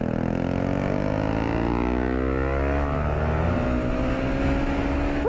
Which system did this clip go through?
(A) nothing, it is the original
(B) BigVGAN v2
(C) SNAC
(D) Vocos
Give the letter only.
A